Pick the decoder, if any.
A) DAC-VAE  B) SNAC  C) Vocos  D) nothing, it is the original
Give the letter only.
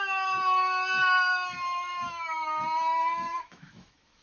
A